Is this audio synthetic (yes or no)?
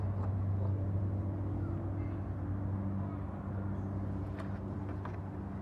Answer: no